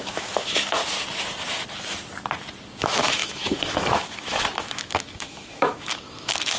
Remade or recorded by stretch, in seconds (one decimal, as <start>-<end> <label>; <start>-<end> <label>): 0.0-0.8 remade; 0.8-2.8 recorded; 2.8-6.6 remade